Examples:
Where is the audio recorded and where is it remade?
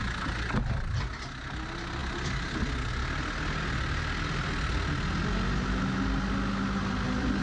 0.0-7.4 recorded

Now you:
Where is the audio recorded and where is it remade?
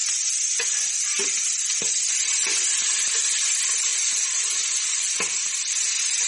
0.0-6.3 recorded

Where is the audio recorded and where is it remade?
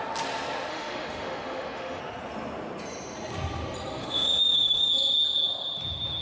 0.0-0.7 recorded; 0.7-2.0 remade; 2.0-4.0 recorded; 4.0-4.9 remade; 4.9-6.2 recorded